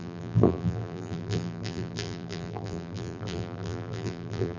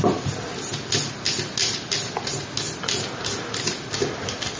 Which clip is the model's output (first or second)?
first